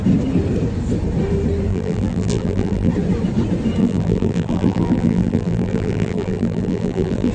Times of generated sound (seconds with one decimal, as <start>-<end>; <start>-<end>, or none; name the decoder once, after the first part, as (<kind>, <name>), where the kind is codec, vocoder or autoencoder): 1.7-2.9 (vocoder, BigVGAN v2); 3.8-7.3